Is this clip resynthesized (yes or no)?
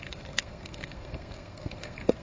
yes